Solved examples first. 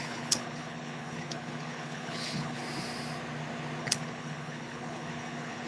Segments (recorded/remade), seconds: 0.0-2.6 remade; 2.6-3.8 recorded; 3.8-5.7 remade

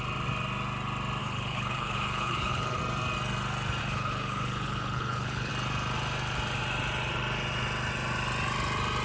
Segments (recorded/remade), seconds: 0.0-1.2 recorded; 1.2-2.8 remade; 2.8-3.8 recorded; 3.8-5.5 remade; 5.5-9.0 recorded